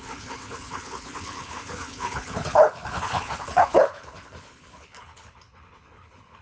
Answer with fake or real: fake